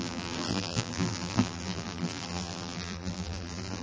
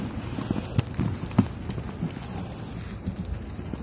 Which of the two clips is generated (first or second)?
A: first